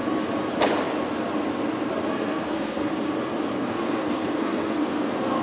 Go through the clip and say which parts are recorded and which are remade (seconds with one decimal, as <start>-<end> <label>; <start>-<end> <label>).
0.0-2.1 recorded; 2.1-2.9 remade; 2.9-3.7 recorded; 3.7-5.4 remade